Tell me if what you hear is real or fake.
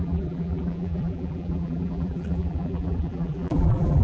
fake